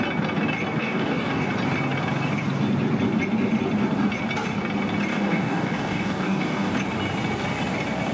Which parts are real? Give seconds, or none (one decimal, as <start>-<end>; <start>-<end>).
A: 0.0-0.8; 1.5-5.1; 6.7-8.1